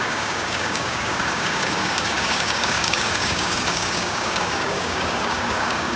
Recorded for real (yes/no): no